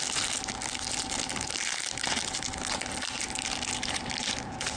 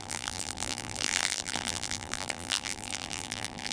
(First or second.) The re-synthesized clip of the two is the second